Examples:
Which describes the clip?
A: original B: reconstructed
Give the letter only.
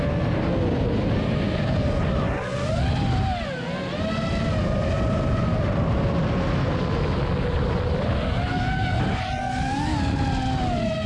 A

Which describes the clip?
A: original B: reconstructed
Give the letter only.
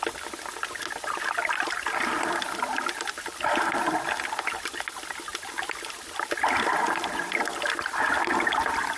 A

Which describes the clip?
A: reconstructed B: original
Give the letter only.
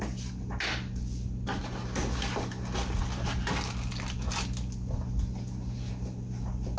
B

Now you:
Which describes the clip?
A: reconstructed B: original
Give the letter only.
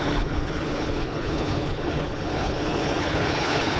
A